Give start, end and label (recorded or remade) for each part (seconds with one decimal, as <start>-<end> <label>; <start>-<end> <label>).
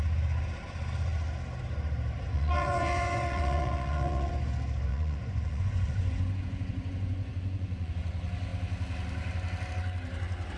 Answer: 0.0-2.3 recorded; 2.3-4.3 remade; 4.3-4.9 recorded; 4.9-7.9 remade; 7.9-10.6 recorded